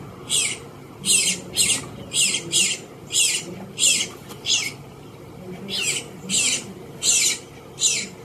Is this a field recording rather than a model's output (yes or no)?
yes